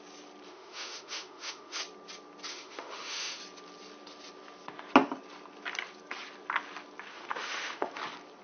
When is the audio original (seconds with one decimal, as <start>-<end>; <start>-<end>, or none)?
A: 0.0-0.5; 1.8-2.5; 3.4-7.1; 8.0-8.4